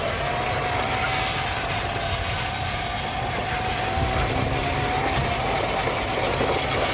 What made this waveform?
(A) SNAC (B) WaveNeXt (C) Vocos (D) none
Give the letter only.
D